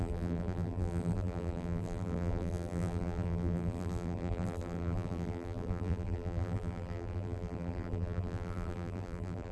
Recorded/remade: remade